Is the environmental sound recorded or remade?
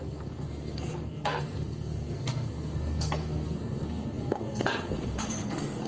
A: remade